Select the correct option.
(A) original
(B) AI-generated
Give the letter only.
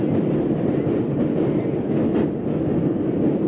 A